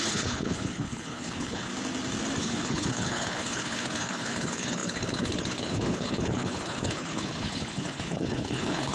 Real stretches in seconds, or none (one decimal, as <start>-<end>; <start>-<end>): 1.7-2.4